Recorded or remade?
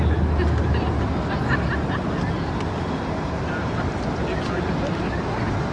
recorded